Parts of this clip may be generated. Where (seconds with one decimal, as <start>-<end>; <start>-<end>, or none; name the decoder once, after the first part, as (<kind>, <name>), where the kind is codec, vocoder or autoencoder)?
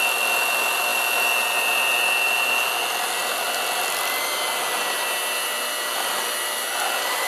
none